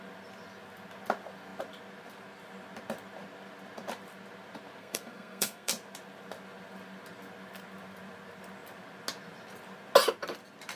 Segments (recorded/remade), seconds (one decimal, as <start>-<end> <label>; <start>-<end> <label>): 0.0-4.8 recorded; 4.8-5.7 remade; 5.7-10.8 recorded